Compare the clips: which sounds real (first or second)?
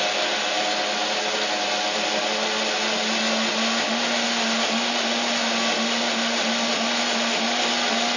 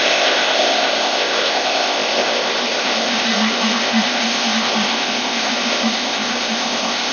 first